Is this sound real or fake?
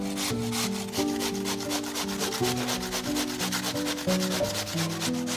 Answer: real